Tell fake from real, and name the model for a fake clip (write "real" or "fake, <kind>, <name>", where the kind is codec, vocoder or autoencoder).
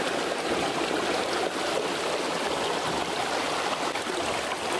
real